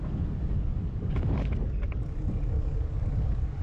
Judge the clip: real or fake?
fake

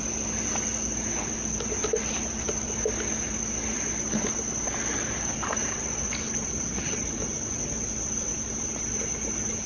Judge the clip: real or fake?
real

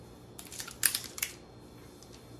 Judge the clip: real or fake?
real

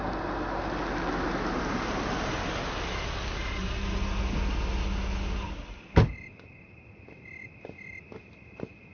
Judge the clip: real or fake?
real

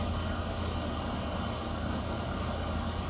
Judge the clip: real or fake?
fake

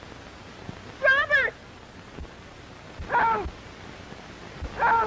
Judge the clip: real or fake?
real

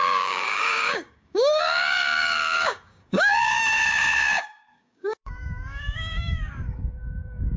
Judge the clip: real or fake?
fake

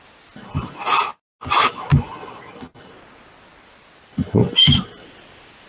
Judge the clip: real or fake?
real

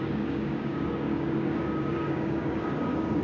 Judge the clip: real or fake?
fake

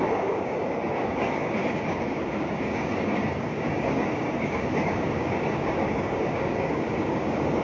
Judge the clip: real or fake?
fake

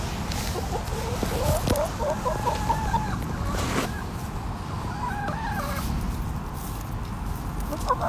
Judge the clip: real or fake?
real